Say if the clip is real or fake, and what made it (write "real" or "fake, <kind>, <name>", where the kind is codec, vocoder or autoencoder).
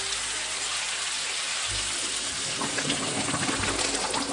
real